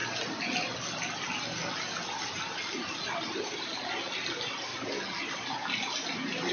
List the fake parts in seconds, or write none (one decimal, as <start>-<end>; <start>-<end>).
none